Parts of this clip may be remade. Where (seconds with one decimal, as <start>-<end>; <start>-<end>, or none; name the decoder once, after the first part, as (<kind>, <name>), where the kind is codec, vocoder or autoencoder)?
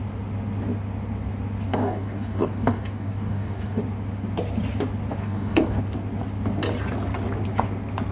1.7-3.8 (codec, DAC); 5.2-5.8